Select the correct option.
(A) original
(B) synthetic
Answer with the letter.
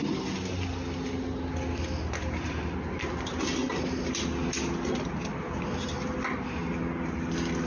A